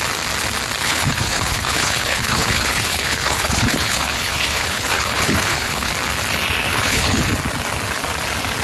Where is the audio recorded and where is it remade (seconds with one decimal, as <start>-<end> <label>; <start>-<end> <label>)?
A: 0.0-0.8 recorded; 0.8-5.9 remade; 5.9-6.7 recorded; 6.7-7.2 remade; 7.2-8.6 recorded

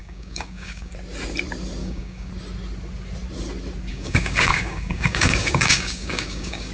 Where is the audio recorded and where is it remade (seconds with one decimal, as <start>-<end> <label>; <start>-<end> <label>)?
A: 0.0-0.9 remade; 0.9-1.8 recorded; 1.8-2.3 remade; 2.3-3.9 recorded; 3.9-6.7 remade

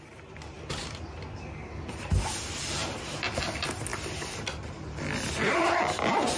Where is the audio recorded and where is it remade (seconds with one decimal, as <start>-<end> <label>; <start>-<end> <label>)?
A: 0.0-6.4 recorded

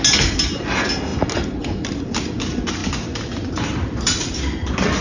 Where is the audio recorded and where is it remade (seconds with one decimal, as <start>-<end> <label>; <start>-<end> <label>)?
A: 0.0-5.0 recorded

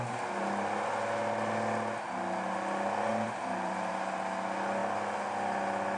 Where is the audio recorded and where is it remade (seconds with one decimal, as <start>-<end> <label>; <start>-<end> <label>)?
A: 0.0-3.1 recorded; 3.1-3.9 remade; 3.9-6.0 recorded

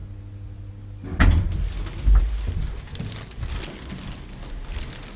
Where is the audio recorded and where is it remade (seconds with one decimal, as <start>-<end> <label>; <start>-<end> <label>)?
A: 0.0-5.2 recorded

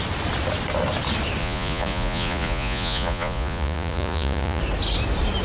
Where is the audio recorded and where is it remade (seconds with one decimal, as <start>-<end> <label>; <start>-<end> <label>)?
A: 0.0-1.4 recorded; 1.4-4.6 remade; 4.6-5.4 recorded

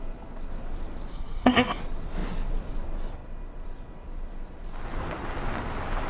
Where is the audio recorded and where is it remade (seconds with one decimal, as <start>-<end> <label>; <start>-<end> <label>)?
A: 0.0-1.1 recorded; 1.1-1.8 remade; 1.8-6.1 recorded